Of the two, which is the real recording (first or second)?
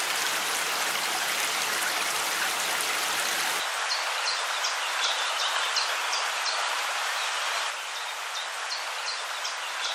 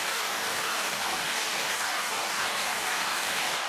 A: first